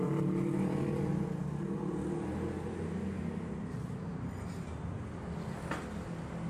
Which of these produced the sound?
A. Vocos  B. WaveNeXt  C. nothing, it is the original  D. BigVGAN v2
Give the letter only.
C